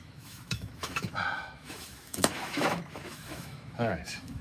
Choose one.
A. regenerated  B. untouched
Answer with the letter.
A